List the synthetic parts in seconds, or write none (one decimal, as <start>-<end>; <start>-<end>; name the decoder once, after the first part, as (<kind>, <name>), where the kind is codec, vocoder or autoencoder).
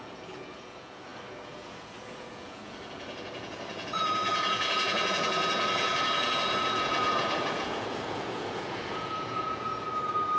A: 0.0-9.7 (vocoder, Vocos)